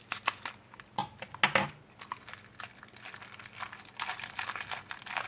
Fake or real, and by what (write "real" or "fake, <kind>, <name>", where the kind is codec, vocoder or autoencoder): real